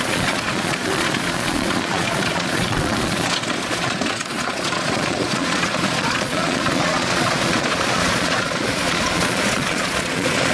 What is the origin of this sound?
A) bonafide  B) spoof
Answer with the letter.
B